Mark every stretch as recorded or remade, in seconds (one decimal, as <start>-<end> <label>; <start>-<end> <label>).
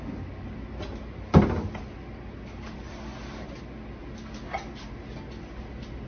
0.0-6.1 recorded